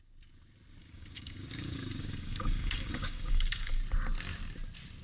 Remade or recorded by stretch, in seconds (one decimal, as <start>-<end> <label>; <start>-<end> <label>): 0.0-0.8 recorded; 0.8-3.8 remade; 3.8-5.0 recorded